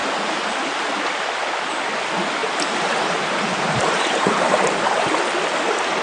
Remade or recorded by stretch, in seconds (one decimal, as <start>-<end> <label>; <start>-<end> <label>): 0.0-2.4 recorded; 2.4-5.1 remade; 5.1-6.0 recorded